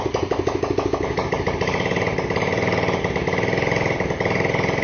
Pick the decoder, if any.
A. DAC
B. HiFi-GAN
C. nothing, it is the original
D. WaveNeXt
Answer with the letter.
C